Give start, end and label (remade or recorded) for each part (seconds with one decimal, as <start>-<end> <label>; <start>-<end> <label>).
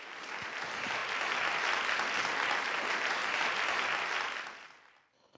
0.0-5.4 recorded